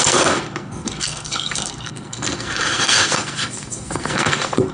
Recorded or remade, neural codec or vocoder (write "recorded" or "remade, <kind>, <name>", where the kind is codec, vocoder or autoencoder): remade, codec, SNAC